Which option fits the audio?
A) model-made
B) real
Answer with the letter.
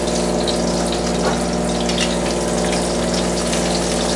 B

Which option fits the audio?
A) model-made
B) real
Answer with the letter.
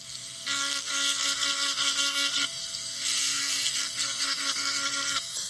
A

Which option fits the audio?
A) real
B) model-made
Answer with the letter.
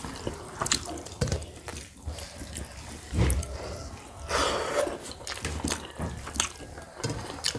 A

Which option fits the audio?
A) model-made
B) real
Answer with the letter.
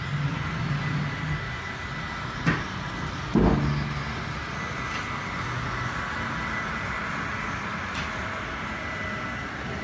B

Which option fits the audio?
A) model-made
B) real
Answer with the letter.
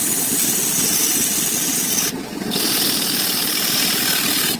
B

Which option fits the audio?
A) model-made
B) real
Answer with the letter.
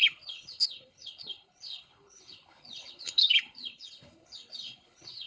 A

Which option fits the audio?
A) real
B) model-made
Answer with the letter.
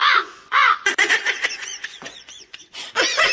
B